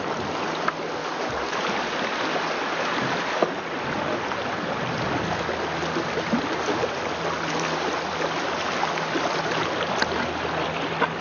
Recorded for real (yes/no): yes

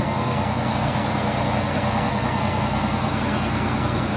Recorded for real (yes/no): no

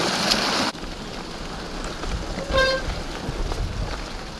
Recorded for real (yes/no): yes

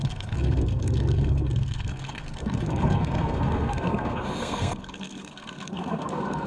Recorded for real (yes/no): no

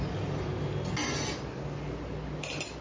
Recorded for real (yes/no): yes